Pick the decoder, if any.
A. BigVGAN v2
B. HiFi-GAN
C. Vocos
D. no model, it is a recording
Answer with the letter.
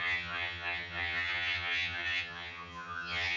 B